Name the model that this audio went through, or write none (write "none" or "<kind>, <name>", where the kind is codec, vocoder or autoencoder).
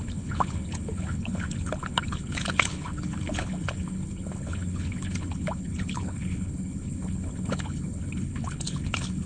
codec, HILCodec